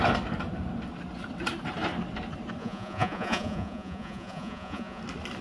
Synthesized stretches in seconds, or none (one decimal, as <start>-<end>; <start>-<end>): 2.6-5.0